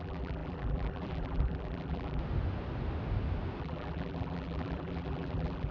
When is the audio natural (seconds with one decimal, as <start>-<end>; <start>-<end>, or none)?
2.2-3.6